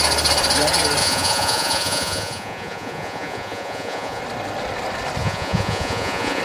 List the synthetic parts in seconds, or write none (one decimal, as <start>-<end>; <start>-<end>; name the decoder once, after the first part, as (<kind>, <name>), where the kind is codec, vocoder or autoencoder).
1.0-4.2 (vocoder, Vocos); 5.2-6.4